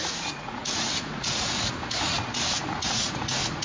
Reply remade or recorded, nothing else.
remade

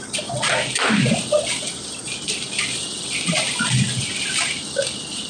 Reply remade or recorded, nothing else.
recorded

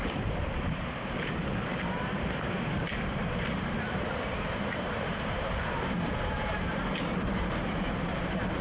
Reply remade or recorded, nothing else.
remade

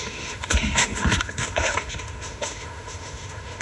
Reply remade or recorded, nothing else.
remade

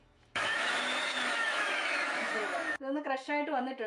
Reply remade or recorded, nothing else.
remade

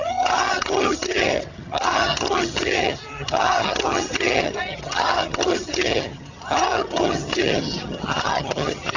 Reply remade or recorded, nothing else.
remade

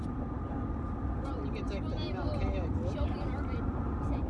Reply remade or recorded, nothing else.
recorded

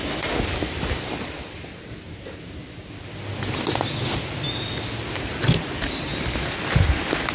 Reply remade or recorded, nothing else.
recorded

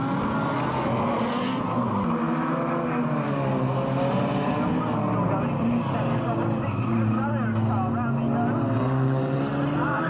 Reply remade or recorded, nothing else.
recorded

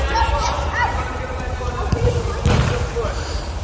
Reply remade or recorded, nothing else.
remade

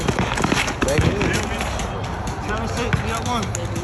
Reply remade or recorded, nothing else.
recorded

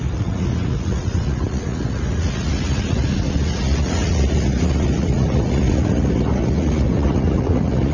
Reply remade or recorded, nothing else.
remade